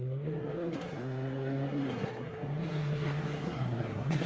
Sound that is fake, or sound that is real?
fake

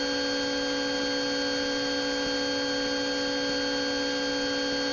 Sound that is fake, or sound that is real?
real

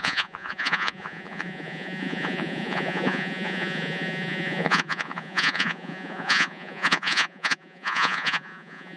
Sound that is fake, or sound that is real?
fake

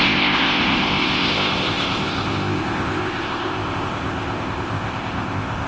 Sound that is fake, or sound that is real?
fake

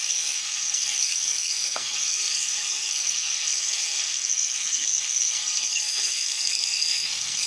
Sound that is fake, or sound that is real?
fake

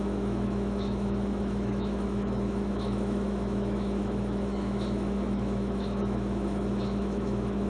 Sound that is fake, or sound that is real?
fake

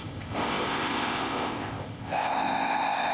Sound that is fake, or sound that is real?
fake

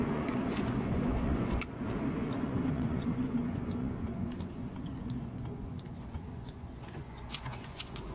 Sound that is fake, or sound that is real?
fake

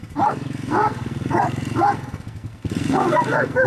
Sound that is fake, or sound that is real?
fake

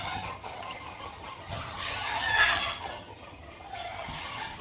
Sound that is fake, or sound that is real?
fake